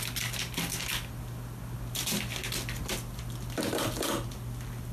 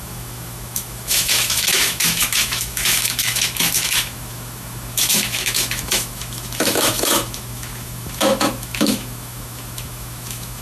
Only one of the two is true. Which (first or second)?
first